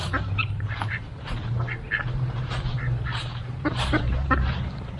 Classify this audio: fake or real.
fake